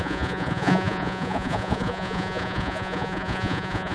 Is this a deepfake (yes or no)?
yes